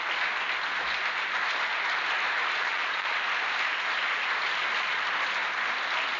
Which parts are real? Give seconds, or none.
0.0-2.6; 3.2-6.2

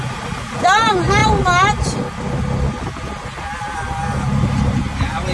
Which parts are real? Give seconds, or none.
0.0-5.3

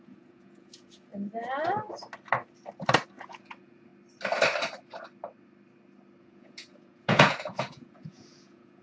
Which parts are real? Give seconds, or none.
1.1-3.2; 3.9-6.2

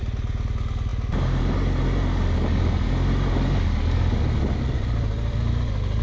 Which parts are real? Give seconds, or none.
0.0-6.0

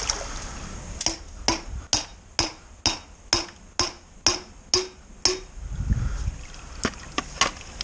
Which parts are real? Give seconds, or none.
0.0-7.8

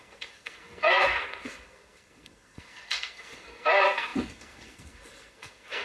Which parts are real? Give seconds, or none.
none